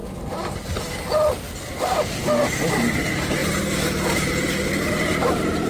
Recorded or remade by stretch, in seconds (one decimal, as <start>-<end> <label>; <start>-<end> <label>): 0.0-2.7 recorded; 2.7-3.4 remade; 3.4-5.7 recorded